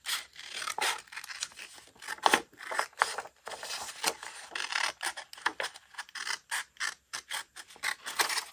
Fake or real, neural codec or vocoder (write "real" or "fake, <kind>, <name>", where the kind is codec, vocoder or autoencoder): real